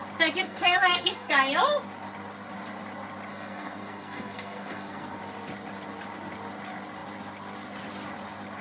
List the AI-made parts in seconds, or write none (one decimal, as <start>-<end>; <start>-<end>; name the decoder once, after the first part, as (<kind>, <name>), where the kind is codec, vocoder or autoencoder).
0.4-1.3 (codec, SNAC); 3.3-5.2